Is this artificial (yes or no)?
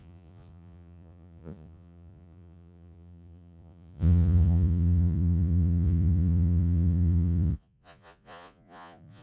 yes